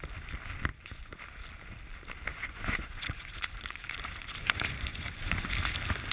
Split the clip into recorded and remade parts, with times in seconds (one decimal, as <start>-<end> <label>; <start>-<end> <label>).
0.0-0.7 recorded; 0.7-1.2 remade; 1.2-2.3 recorded; 2.3-5.5 remade; 5.5-6.1 recorded